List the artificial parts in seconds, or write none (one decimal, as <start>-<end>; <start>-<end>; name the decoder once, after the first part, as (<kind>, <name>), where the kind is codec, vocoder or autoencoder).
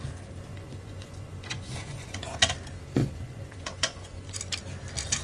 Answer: 0.5-2.4 (vocoder, Vocos); 3.0-4.4